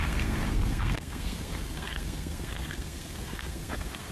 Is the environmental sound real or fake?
fake